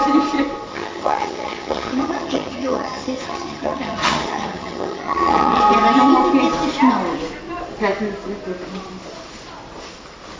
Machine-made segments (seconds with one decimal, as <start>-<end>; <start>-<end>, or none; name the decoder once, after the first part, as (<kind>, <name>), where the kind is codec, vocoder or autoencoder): 0.7-5.6 (vocoder, HiFi-GAN)